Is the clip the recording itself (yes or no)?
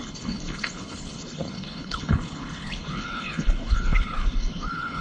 no